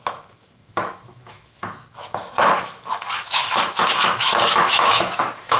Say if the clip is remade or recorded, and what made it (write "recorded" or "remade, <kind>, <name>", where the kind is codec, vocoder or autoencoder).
remade, autoencoder, DAC-VAE